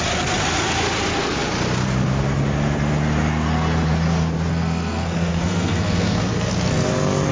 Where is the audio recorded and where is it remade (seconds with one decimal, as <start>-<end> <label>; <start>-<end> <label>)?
0.0-4.5 recorded; 4.5-6.5 remade; 6.5-7.3 recorded